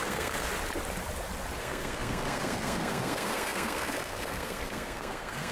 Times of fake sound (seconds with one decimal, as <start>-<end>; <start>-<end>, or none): 0.0-0.5; 1.6-5.5